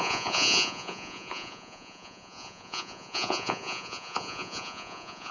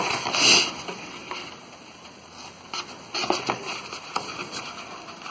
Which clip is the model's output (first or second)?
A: first